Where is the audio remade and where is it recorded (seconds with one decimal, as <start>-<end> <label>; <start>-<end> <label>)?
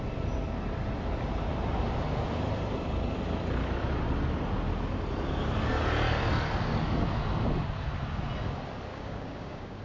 0.0-8.9 recorded; 8.9-9.8 remade